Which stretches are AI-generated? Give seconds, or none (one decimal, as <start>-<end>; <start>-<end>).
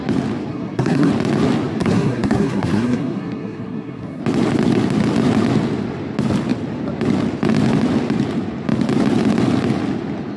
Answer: 0.5-1.1; 1.8-4.2